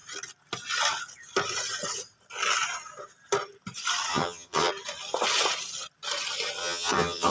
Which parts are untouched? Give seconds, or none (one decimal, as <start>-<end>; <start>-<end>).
0.0-4.1; 4.7-6.6